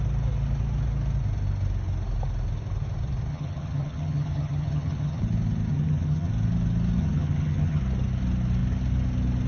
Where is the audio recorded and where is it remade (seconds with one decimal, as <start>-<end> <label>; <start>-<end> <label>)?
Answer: 0.0-3.3 recorded; 3.3-5.2 remade; 5.2-5.7 recorded; 5.7-6.3 remade; 6.3-7.0 recorded; 7.0-7.8 remade; 7.8-9.5 recorded